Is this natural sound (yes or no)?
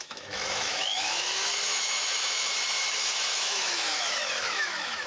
no